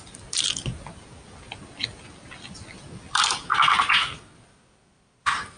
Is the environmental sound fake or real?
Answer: real